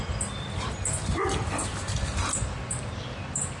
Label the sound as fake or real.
real